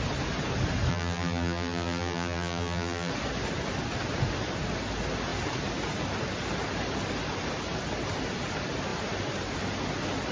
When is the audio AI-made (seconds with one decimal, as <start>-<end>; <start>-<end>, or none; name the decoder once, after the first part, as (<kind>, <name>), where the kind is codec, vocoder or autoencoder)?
0.9-3.1 (vocoder, BigVGAN v2)